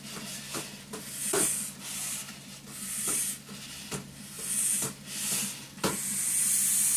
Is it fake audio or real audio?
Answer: real